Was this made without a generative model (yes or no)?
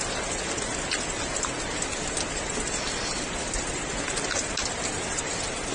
yes